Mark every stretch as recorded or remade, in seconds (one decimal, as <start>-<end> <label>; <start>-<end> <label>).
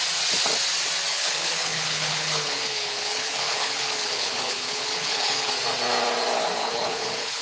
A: 0.0-1.1 recorded; 1.1-5.5 remade; 5.5-6.6 recorded; 6.6-7.4 remade